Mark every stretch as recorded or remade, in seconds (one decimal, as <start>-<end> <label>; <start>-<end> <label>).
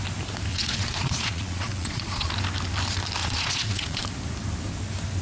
0.0-0.5 recorded; 0.5-2.3 remade; 2.3-3.2 recorded; 3.2-4.0 remade; 4.0-5.2 recorded